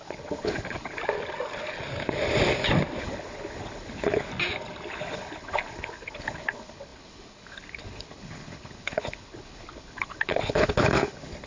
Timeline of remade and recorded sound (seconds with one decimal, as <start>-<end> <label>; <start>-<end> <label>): 0.0-1.0 remade; 1.0-3.0 recorded; 3.0-4.3 remade; 4.3-4.9 recorded; 4.9-11.5 remade